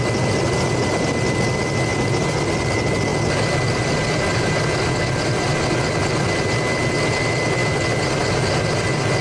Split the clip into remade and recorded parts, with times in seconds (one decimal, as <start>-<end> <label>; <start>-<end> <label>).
0.0-9.2 recorded